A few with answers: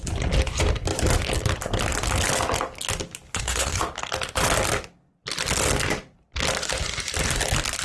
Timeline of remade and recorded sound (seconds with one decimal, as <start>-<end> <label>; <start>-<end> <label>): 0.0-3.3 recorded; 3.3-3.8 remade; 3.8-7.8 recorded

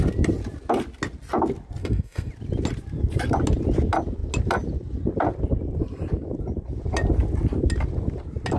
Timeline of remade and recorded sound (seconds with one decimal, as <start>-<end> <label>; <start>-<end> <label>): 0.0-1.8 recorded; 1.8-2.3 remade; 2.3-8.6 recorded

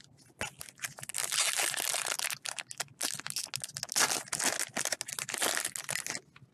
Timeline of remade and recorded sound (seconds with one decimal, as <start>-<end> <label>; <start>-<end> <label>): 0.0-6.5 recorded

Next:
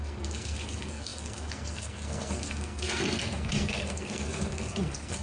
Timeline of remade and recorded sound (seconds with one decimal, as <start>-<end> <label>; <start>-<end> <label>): 0.0-5.2 remade

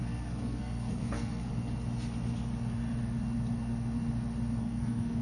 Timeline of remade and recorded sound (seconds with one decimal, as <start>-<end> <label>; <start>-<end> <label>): 0.0-1.5 remade; 1.5-4.6 recorded; 4.6-5.2 remade

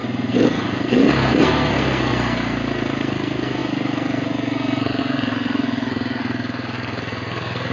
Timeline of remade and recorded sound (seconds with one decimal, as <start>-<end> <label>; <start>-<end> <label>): 0.0-7.7 remade

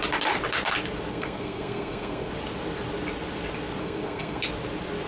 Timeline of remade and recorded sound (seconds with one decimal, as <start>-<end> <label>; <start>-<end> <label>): 0.0-1.1 recorded; 1.1-2.3 remade; 2.3-3.8 recorded; 3.8-4.4 remade; 4.4-5.1 recorded

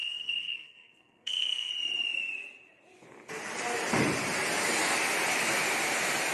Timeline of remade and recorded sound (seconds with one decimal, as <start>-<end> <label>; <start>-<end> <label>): 0.0-1.7 remade; 1.7-6.3 recorded